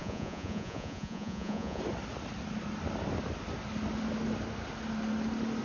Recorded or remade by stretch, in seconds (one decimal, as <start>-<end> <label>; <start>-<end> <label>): 0.0-1.8 remade; 1.8-5.6 recorded